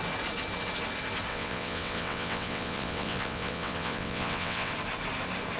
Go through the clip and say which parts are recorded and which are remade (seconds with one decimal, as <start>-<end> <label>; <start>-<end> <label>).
0.0-1.3 recorded; 1.3-4.7 remade; 4.7-5.6 recorded